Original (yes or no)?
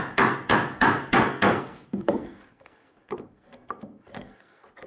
no